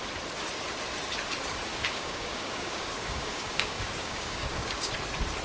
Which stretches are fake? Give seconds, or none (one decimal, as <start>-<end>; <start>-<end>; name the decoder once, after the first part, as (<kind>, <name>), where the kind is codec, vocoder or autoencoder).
1.7-4.9 (codec, DAC)